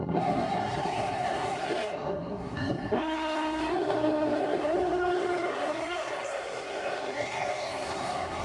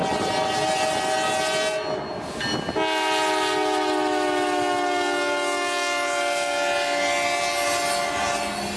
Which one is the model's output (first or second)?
first